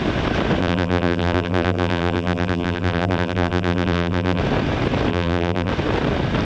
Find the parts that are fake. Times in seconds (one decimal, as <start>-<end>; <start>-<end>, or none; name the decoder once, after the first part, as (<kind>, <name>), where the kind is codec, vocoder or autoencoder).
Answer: 0.6-4.4 (vocoder, BigVGAN v2); 5.1-5.7